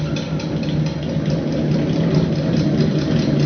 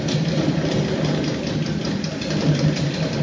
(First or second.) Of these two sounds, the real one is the first